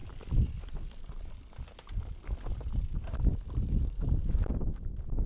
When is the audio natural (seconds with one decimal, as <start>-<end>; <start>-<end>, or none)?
0.0-5.3